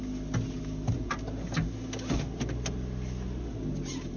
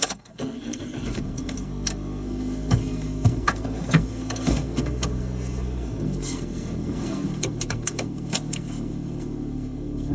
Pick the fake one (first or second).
second